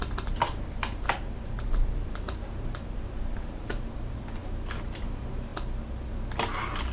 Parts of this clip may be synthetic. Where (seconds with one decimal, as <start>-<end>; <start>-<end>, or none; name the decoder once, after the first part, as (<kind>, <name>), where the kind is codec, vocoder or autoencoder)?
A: 0.0-4.1 (vocoder, BigVGAN v2)